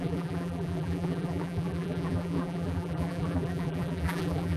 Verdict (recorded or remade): remade